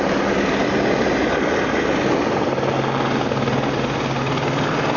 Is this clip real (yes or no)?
yes